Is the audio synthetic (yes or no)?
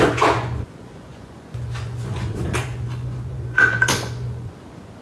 yes